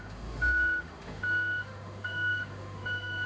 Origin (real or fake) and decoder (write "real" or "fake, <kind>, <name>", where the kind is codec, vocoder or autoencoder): fake, autoencoder, DAC-VAE